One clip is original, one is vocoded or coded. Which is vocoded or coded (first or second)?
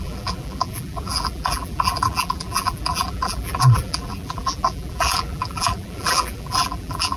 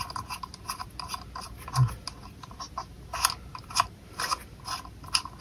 first